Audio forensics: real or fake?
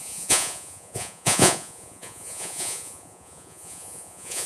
fake